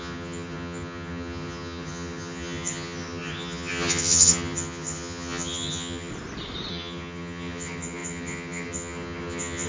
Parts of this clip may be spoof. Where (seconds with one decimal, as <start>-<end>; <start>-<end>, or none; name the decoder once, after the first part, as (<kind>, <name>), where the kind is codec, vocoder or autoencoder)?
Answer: 0.0-6.1 (vocoder, HiFi-GAN); 6.7-9.7